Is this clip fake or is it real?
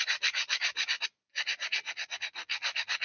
real